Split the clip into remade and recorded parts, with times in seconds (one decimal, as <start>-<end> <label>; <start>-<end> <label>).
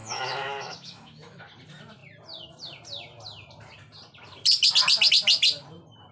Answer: 0.0-1.4 remade; 1.4-6.1 recorded